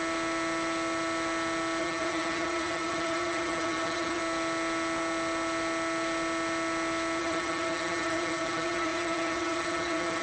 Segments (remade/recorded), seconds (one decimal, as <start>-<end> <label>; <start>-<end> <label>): 0.0-1.8 recorded; 1.8-4.2 remade; 4.2-7.2 recorded; 7.2-10.2 remade